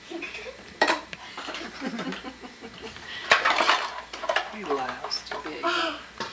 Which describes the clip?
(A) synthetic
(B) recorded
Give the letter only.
A